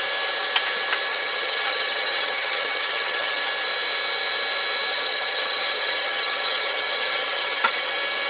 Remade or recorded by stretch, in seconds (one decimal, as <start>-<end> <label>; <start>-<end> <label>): 0.0-1.1 recorded; 1.1-3.5 remade; 3.5-4.9 recorded; 4.9-7.9 remade; 7.9-8.3 recorded